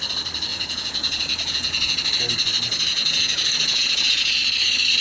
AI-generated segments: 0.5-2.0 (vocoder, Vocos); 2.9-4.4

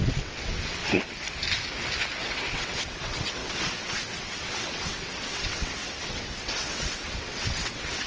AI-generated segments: 0.0-0.8 (vocoder, WaveNeXt); 2.2-8.1

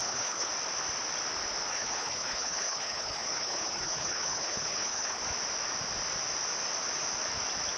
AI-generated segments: 0.0-0.5 (codec, HILCodec); 1.7-5.2